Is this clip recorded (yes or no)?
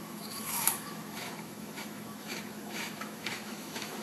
no